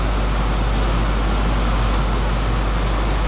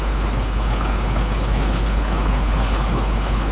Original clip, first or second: first